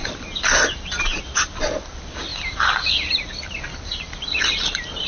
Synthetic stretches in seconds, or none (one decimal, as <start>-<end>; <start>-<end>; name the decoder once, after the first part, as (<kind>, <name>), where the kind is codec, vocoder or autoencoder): 0.0-0.6 (vocoder, BigVGAN v2); 2.3-5.1